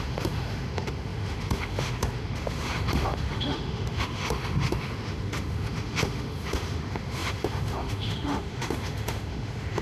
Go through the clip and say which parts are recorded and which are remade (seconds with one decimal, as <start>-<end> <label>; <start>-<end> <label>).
0.0-9.8 remade